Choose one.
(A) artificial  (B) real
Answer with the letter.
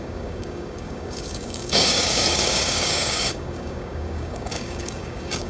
A